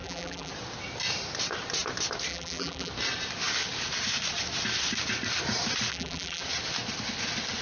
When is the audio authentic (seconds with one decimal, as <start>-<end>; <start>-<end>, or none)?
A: 0.5-2.3; 2.9-5.9; 6.4-7.6